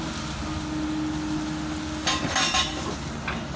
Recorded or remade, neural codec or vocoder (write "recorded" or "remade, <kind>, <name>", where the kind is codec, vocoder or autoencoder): recorded